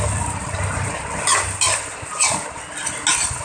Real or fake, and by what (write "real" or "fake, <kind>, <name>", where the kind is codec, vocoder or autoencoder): real